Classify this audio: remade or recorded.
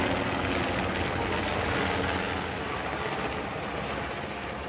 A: recorded